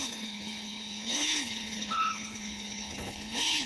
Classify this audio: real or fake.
fake